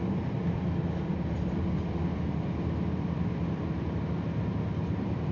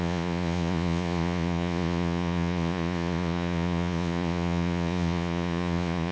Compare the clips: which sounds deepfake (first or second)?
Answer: second